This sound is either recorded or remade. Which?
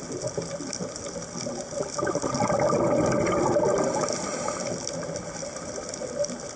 recorded